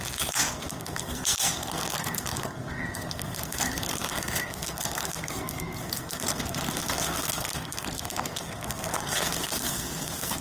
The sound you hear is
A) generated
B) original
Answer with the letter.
A